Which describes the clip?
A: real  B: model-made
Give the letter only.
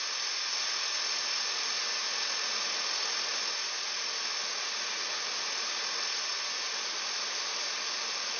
A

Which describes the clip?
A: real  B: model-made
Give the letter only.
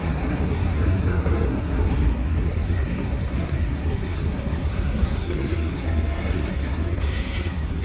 B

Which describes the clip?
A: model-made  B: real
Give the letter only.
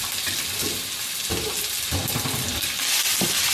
B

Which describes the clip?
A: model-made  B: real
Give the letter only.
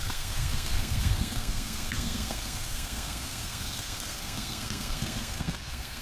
A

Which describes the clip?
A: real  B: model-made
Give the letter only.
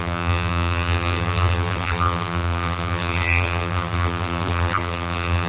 B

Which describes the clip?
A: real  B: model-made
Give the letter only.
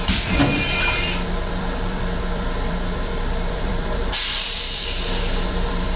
B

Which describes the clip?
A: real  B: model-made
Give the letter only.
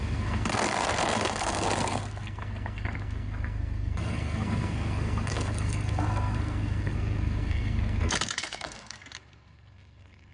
B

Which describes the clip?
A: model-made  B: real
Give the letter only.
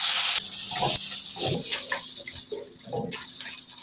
B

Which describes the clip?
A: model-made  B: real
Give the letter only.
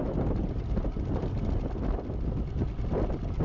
B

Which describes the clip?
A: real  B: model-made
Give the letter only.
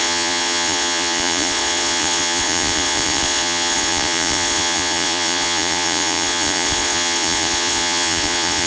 B